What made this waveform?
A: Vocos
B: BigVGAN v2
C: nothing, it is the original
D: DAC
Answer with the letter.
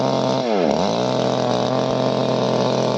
C